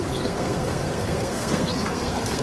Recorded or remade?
remade